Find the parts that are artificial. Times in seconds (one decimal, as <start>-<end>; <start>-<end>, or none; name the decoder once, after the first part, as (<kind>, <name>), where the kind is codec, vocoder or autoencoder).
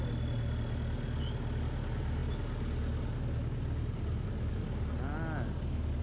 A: none